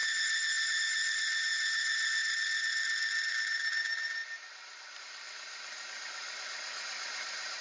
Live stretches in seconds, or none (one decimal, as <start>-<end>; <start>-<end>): 0.0-0.8; 1.5-3.3; 4.2-5.0